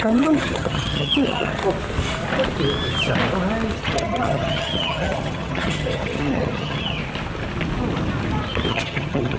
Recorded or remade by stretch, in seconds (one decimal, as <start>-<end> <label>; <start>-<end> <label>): 0.0-1.6 remade; 1.6-3.8 recorded; 3.8-7.0 remade; 7.0-8.7 recorded; 8.7-9.4 remade